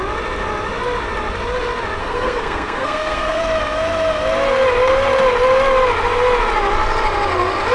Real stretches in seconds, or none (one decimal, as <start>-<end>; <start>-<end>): 0.0-2.0; 3.4-7.7